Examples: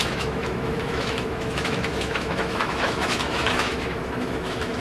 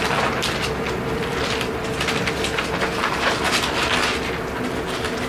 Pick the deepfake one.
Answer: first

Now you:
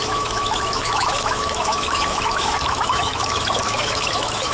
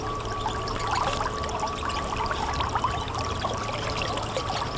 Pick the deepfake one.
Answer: first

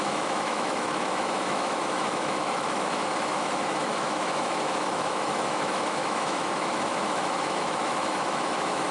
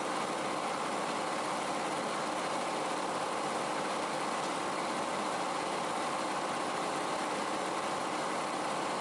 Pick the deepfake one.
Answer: first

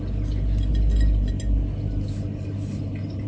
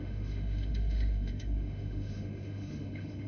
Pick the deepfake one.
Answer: second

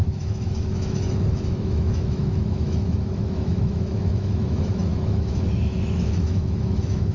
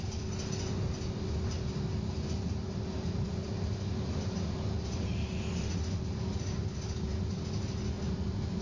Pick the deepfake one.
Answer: first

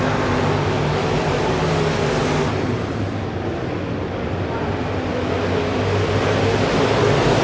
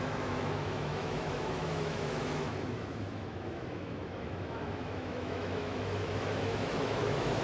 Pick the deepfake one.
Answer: second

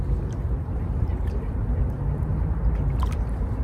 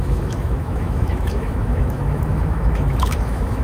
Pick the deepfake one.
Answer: second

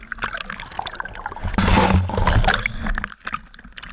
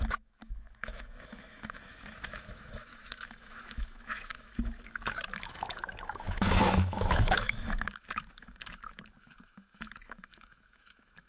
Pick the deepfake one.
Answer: second